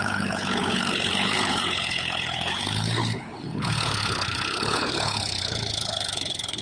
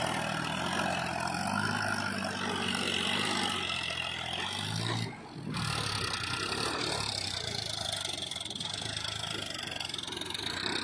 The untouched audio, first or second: second